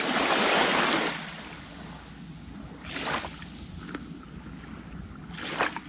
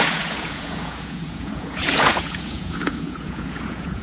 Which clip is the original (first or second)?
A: first